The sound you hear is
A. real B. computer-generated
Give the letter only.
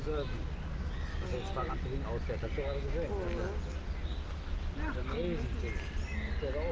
A